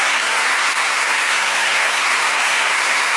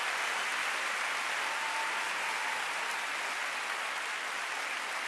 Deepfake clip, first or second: first